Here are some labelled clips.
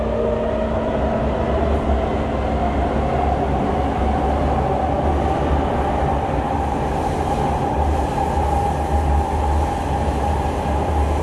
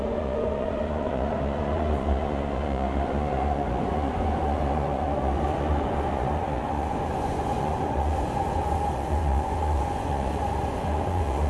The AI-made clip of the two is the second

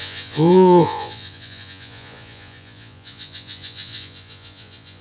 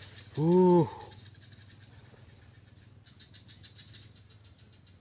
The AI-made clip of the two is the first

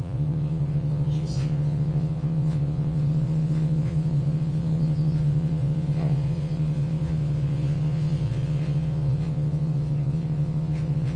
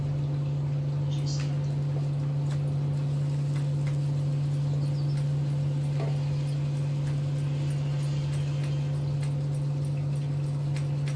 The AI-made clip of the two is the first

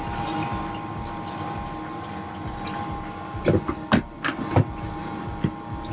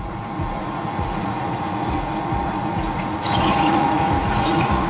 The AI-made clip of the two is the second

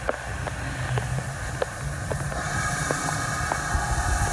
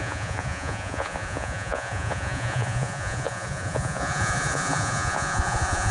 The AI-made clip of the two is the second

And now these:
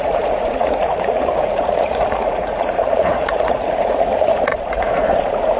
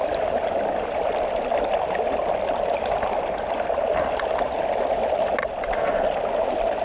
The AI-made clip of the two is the first